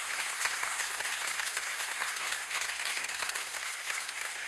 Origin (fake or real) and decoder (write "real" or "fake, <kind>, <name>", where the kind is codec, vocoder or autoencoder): fake, codec, SNAC